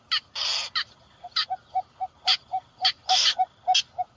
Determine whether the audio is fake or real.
real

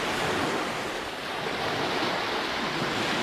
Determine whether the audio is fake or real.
real